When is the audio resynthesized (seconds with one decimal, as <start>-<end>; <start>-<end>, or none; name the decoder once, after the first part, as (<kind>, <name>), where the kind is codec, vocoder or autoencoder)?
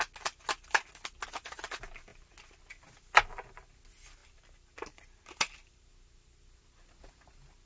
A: none